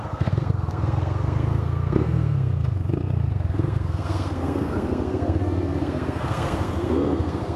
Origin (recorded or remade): remade